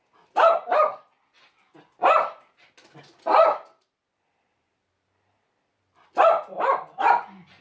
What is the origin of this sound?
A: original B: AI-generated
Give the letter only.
A